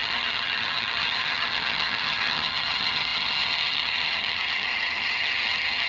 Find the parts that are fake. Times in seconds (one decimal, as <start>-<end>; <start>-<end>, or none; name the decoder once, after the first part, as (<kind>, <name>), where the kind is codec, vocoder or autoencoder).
0.0-5.9 (vocoder, HiFi-GAN)